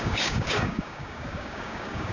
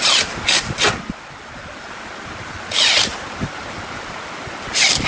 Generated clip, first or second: first